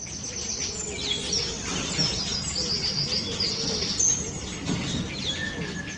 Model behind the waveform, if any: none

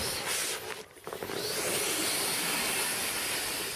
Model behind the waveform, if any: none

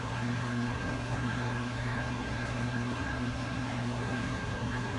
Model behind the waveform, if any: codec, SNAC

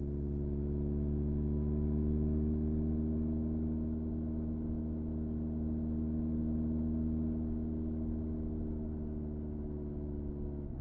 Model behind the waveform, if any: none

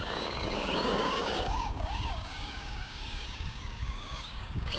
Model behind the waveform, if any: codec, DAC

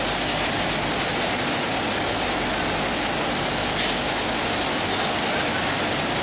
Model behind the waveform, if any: none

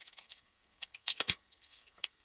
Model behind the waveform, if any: codec, SNAC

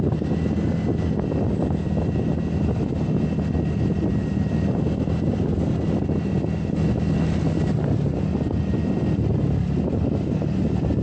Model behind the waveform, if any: none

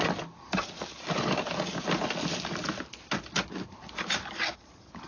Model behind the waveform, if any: none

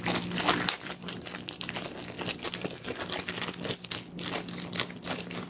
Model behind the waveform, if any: none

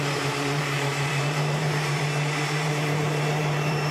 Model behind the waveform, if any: vocoder, BigVGAN v2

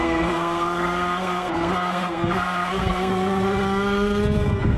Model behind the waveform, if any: codec, SNAC